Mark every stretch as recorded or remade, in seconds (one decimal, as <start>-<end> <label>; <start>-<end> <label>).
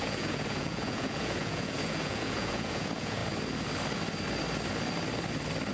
0.0-3.2 remade; 3.2-5.7 recorded